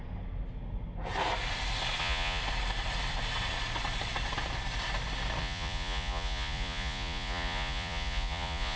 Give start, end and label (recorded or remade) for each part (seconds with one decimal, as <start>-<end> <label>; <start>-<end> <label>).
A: 0.0-2.0 recorded; 2.0-2.4 remade; 2.4-5.4 recorded; 5.4-8.8 remade